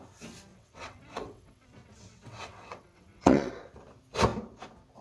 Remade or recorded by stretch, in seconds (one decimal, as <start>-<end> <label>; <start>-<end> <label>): 0.0-0.5 recorded; 0.5-3.5 remade; 3.5-5.0 recorded